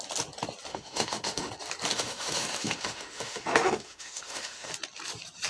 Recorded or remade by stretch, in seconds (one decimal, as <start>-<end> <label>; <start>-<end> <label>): 0.0-0.7 recorded; 0.7-1.5 remade; 1.5-1.9 recorded; 1.9-4.7 remade; 4.7-5.5 recorded

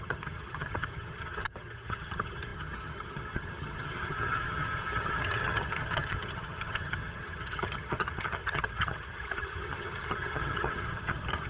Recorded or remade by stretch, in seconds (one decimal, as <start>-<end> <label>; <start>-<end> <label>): 0.0-11.5 remade